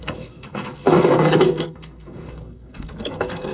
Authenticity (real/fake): fake